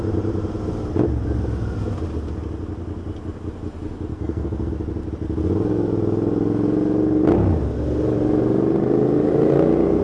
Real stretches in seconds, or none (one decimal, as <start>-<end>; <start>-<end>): 0.0-4.1; 4.7-10.0